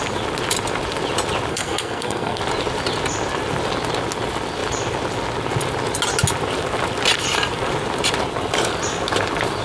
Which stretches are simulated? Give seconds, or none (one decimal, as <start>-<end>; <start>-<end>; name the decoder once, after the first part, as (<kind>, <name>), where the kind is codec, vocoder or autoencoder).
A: 1.5-2.4 (codec, SNAC)